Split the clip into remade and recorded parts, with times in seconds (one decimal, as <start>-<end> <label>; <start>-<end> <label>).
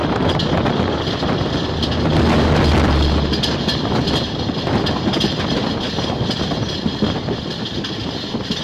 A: 0.0-8.6 recorded